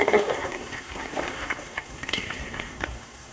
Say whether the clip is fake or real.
fake